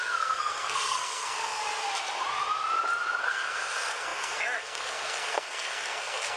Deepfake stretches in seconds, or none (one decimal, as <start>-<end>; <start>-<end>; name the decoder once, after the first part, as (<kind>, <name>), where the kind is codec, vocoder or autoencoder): 0.0-1.6 (codec, SNAC); 3.2-6.4